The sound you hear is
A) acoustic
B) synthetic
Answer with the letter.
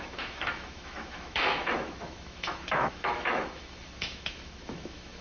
B